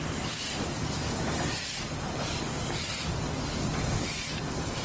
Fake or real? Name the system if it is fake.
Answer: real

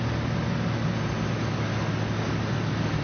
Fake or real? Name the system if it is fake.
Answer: real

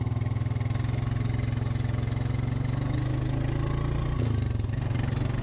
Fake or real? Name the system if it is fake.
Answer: real